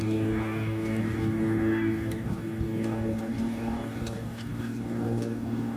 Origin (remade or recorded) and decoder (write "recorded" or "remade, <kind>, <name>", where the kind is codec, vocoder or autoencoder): remade, codec, DAC